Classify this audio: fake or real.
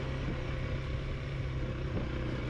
real